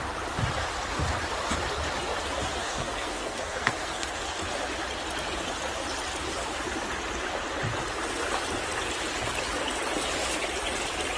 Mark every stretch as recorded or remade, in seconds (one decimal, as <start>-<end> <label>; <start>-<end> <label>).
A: 0.0-2.6 recorded; 2.6-4.4 remade; 4.4-11.2 recorded